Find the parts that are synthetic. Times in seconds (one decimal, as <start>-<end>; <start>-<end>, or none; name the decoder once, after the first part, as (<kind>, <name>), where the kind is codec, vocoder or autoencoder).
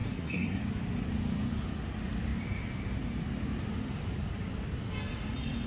0.0-0.6 (codec, SNAC)